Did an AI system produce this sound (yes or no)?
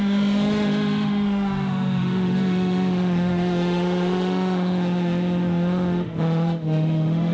yes